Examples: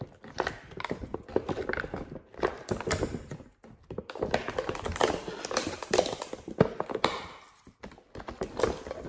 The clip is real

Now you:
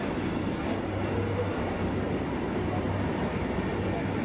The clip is real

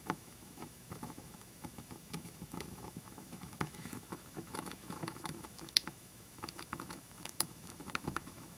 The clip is fake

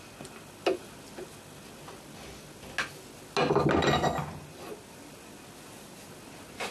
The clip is real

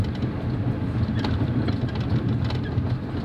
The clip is real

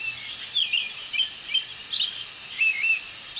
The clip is real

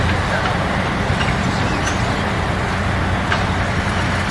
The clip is real